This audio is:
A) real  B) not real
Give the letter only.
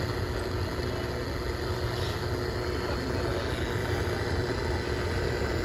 A